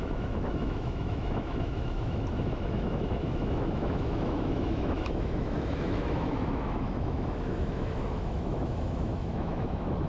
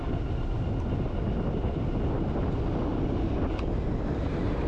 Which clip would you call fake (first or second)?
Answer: first